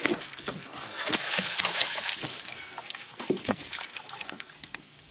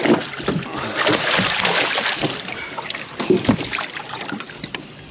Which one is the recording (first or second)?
second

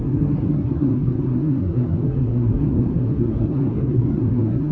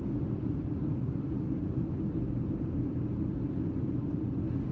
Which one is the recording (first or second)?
second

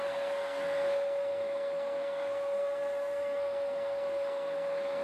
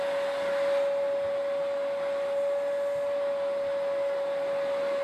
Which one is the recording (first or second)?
second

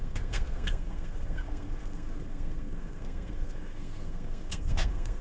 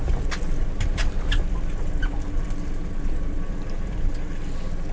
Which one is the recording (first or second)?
second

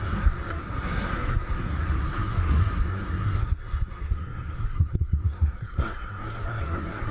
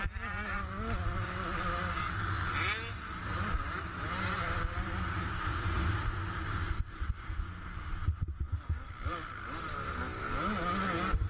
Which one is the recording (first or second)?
second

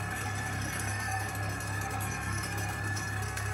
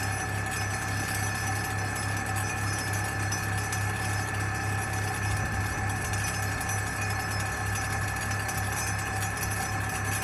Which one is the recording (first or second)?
second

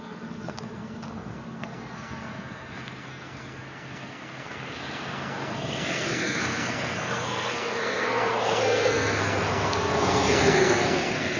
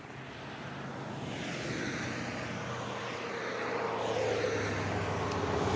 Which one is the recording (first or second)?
second